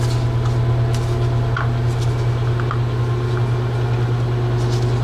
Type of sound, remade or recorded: recorded